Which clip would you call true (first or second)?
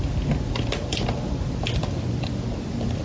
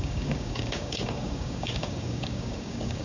first